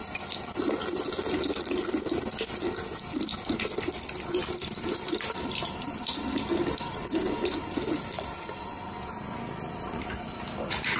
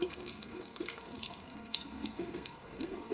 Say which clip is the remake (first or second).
second